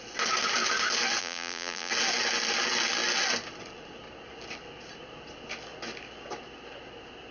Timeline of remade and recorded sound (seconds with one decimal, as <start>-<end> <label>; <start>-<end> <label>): 0.0-1.2 recorded; 1.2-1.9 remade; 1.9-7.3 recorded

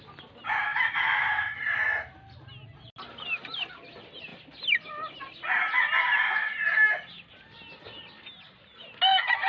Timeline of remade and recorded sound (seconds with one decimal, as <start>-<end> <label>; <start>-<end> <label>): 0.0-0.7 recorded; 0.7-1.2 remade; 1.2-9.5 recorded

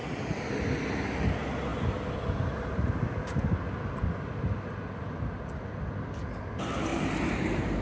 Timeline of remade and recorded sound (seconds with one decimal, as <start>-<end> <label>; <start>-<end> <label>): 0.0-6.9 recorded; 6.9-7.8 remade

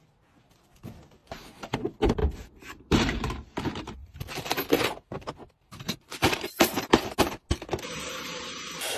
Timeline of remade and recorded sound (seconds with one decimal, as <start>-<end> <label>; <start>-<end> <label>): 0.0-1.2 recorded; 1.2-1.8 remade; 1.8-2.2 recorded; 2.2-3.3 remade; 3.3-4.0 recorded; 4.0-7.3 remade; 7.3-9.0 recorded